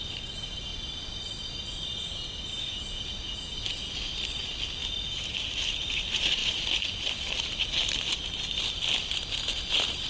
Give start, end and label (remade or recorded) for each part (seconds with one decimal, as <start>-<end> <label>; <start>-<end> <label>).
0.0-4.8 recorded; 4.8-5.4 remade; 5.4-6.4 recorded; 6.4-8.6 remade; 8.6-10.1 recorded